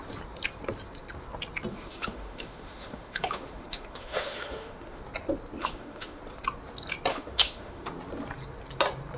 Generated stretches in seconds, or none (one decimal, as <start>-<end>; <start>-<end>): 1.7-5.0; 5.6-6.2; 7.1-7.9